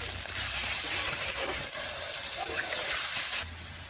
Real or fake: real